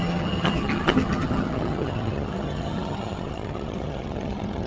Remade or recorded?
remade